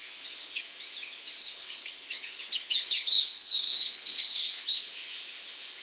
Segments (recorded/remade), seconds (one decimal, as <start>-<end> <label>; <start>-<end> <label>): 0.0-0.6 remade; 0.6-1.4 recorded; 1.4-4.9 remade; 4.9-5.8 recorded